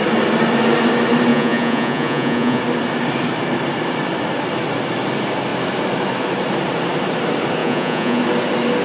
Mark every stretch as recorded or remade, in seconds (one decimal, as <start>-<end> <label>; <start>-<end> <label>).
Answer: 0.0-1.3 recorded; 1.3-2.6 remade; 2.6-7.6 recorded; 7.6-8.2 remade; 8.2-8.8 recorded

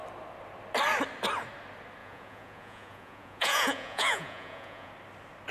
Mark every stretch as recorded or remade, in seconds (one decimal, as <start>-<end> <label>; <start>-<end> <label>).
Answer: 0.0-2.0 recorded; 2.0-4.9 remade; 4.9-5.5 recorded

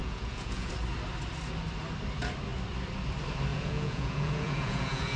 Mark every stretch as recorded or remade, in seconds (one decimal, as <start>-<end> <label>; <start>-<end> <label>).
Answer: 0.0-0.7 remade; 0.7-3.5 recorded; 3.5-5.2 remade